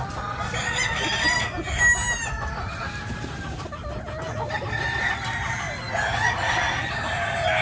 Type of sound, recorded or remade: recorded